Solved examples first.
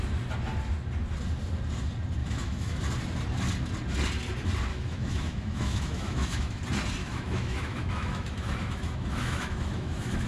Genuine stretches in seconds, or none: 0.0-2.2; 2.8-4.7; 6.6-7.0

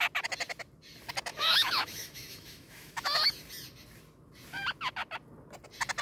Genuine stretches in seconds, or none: 0.0-1.3; 3.3-6.0

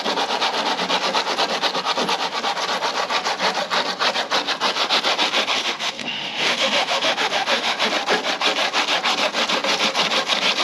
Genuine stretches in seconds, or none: 0.0-5.6; 7.9-10.6

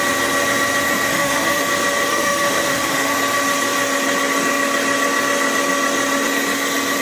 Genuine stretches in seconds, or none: 0.0-1.1; 1.6-2.1; 3.1-7.0

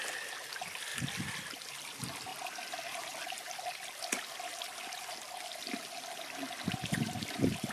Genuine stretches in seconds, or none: 0.0-7.7

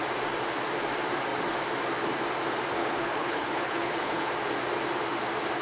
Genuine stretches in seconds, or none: 0.0-2.8; 4.3-5.6

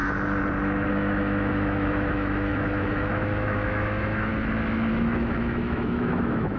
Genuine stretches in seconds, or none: 0.0-0.9; 4.3-4.9

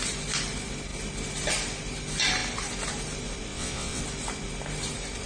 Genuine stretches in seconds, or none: 0.0-3.5; 4.0-5.3